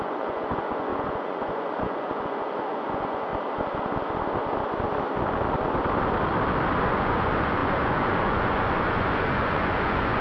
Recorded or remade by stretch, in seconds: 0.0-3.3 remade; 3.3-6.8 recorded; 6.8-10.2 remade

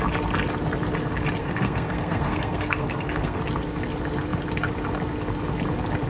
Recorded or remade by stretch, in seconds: 0.0-1.4 recorded; 1.4-3.4 remade; 3.4-6.1 recorded

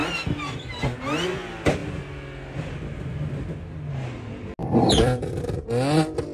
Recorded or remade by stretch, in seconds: 0.0-4.6 recorded; 4.6-5.4 remade; 5.4-6.3 recorded

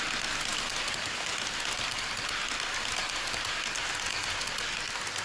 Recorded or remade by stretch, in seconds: 0.0-5.2 recorded

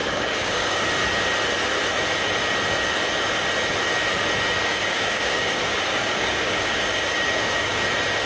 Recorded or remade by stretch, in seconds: 0.0-0.8 remade; 0.8-4.7 recorded; 4.7-7.9 remade; 7.9-8.3 recorded